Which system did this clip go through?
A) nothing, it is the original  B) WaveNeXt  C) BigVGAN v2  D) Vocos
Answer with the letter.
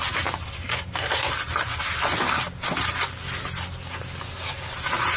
A